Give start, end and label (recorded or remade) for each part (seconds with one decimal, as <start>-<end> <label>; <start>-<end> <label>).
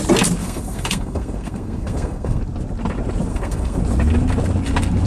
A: 0.0-0.4 recorded; 0.4-2.4 remade; 2.4-3.3 recorded; 3.3-3.8 remade; 3.8-5.1 recorded